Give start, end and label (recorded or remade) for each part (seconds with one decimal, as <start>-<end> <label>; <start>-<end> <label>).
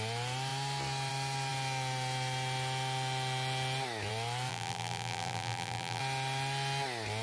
0.0-4.5 recorded; 4.5-6.0 remade; 6.0-7.2 recorded